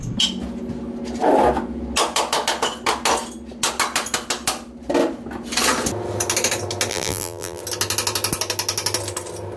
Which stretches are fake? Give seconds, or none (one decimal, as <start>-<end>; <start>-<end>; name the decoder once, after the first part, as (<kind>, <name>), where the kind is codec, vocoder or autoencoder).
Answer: 6.9-7.6 (vocoder, BigVGAN v2)